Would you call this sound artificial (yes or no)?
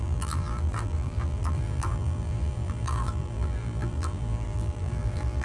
yes